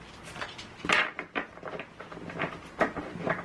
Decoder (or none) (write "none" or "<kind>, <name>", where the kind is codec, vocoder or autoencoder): none